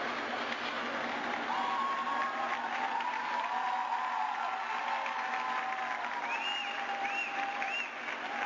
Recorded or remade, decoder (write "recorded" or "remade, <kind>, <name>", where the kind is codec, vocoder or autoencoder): recorded